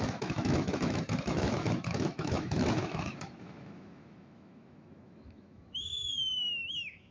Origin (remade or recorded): remade